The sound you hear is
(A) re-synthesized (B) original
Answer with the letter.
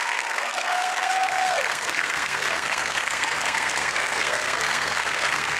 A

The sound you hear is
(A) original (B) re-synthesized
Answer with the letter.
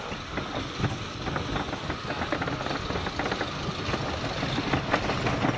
A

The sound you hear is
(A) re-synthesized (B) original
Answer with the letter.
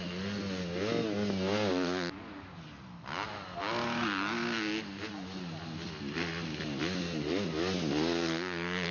B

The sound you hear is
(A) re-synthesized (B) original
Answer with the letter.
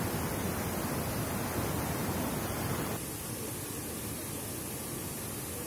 B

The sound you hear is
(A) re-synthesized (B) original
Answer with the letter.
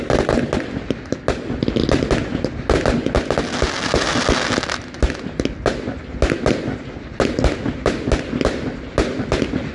B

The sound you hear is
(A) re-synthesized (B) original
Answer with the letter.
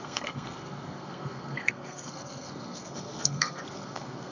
A